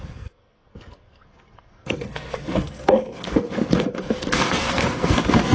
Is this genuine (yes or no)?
no